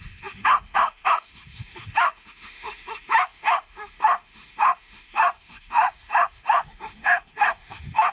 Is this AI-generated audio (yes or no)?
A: yes